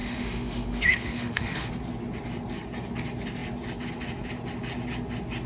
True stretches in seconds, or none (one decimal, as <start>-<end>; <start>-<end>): 1.7-5.5